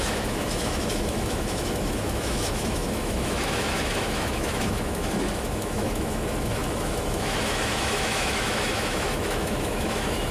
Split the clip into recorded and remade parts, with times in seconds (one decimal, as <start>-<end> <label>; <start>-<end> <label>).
0.0-10.3 remade